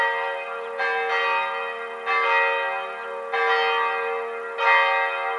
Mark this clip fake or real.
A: real